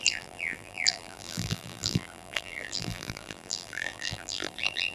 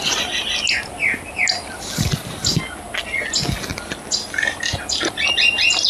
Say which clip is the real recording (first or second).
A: second